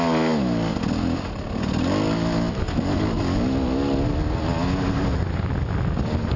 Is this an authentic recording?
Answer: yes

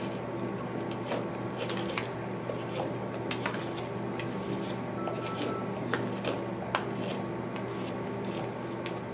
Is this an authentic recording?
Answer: yes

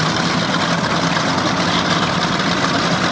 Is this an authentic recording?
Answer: yes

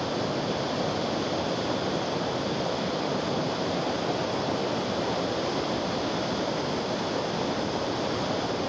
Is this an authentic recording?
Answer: yes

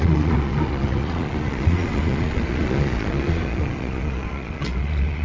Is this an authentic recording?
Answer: no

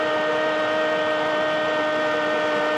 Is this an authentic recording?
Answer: yes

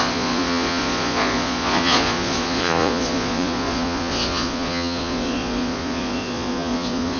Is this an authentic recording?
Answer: no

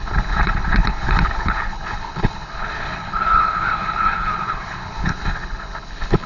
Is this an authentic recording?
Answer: no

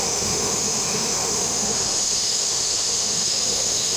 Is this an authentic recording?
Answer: no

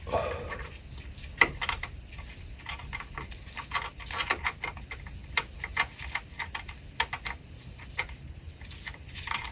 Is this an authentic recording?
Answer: yes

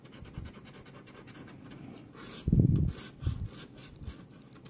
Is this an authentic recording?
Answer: yes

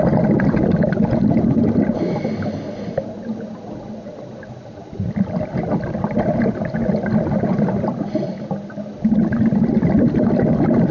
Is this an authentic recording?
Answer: yes